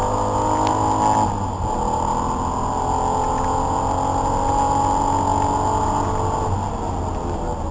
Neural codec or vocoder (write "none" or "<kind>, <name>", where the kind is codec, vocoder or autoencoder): none